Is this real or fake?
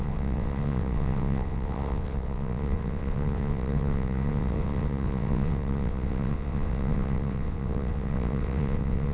fake